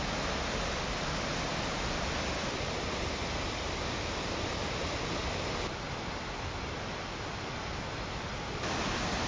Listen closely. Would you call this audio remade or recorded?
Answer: recorded